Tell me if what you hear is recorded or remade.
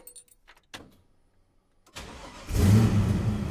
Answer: recorded